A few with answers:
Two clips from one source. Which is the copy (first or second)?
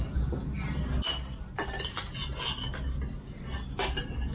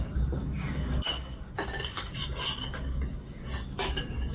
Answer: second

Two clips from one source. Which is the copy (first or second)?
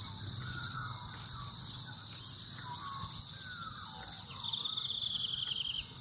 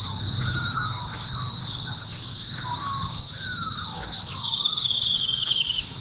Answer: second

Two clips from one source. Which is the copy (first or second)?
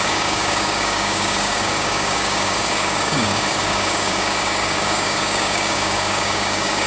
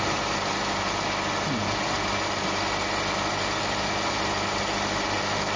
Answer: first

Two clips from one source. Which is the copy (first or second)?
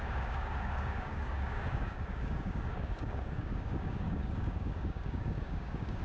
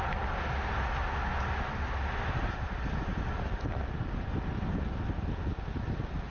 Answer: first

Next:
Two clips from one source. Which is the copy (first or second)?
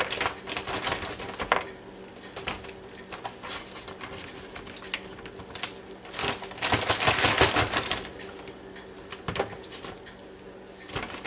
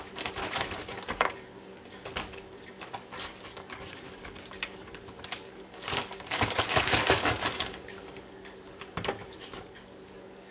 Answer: second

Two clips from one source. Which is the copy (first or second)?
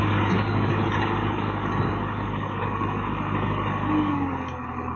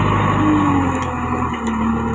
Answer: first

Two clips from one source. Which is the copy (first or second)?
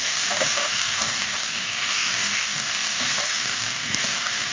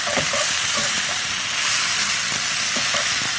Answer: first